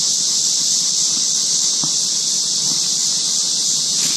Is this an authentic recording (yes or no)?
yes